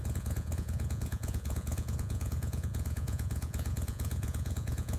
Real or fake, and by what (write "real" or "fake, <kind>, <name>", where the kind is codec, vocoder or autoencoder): fake, vocoder, Vocos